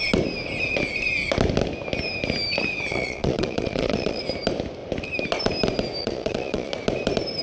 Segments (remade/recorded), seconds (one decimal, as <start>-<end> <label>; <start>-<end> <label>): 0.0-2.9 recorded; 2.9-4.2 remade; 4.2-6.0 recorded; 6.0-6.7 remade; 6.7-7.4 recorded